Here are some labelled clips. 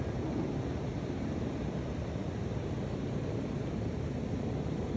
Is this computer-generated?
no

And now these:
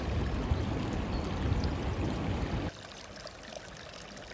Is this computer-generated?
no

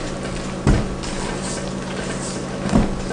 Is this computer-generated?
no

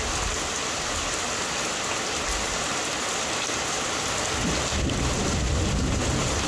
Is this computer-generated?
no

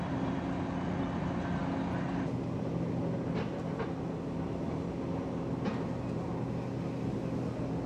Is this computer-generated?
no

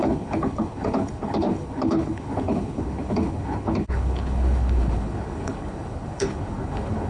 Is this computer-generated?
yes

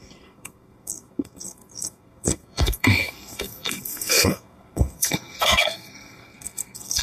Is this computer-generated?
yes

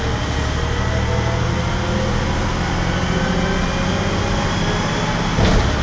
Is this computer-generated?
no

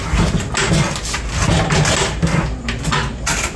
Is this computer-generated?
no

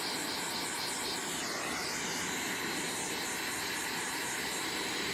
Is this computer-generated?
no